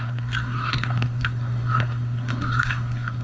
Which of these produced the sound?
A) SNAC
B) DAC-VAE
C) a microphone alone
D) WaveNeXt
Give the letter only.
A